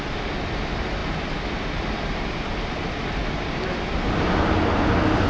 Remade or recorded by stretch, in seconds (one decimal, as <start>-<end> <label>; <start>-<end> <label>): 0.0-5.3 recorded